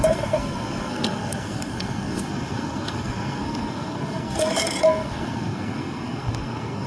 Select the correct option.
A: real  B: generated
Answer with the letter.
B